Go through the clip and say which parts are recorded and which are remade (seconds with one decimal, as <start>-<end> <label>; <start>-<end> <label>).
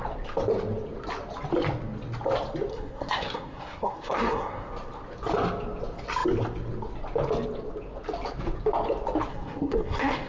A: 0.0-2.7 recorded; 2.7-4.7 remade; 4.7-9.3 recorded; 9.3-10.3 remade